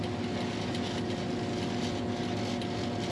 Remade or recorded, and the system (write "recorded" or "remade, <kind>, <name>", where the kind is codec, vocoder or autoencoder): recorded